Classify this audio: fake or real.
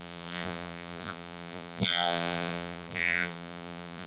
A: fake